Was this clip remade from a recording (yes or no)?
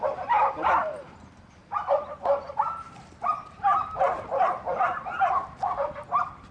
no